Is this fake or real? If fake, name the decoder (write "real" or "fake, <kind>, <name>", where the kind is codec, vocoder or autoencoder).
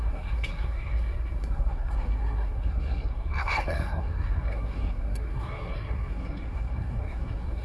fake, codec, SNAC